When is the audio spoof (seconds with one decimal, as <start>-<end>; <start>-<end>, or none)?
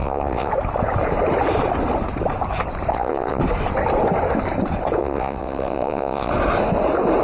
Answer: 0.0-0.5; 2.9-3.4; 5.0-6.3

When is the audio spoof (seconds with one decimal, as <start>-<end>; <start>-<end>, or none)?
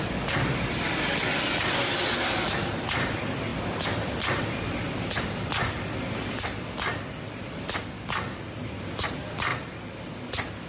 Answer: none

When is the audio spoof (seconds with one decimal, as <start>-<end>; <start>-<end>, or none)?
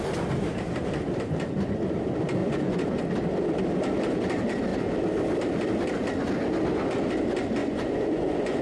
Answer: 2.4-3.0; 7.6-8.6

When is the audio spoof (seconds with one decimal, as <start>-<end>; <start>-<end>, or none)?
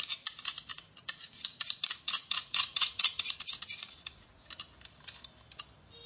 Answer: 0.7-4.4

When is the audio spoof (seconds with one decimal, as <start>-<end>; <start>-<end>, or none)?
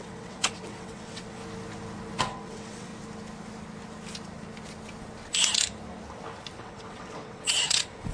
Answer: 0.0-1.4; 2.2-2.9; 6.6-8.1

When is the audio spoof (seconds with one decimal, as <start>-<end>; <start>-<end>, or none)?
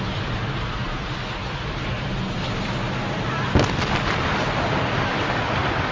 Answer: none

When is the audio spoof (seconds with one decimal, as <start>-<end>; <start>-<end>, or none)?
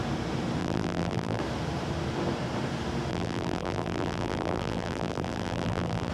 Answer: 0.6-1.4; 3.1-6.1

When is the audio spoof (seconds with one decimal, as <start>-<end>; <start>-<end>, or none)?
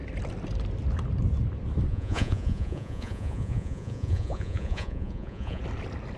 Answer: 1.9-5.6